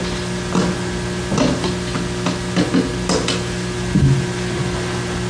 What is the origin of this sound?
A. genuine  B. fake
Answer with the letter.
A